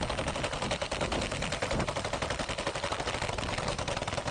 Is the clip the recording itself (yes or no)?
yes